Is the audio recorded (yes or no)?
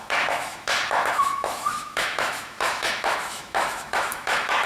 no